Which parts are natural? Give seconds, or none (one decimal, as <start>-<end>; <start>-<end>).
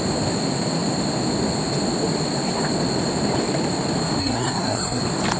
0.0-4.2; 5.0-5.4